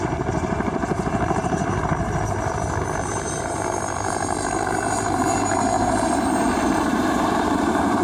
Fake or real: fake